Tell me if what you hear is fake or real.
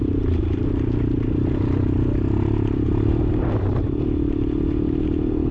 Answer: real